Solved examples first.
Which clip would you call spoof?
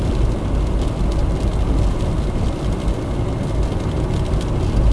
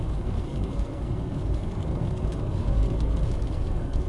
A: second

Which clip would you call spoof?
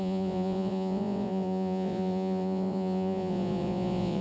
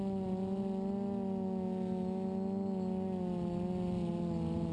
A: first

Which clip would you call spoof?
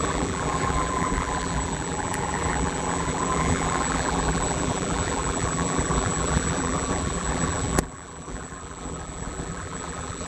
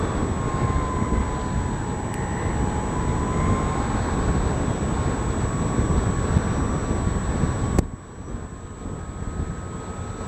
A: first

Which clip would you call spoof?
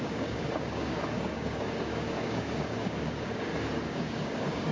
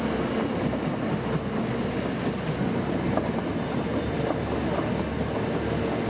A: first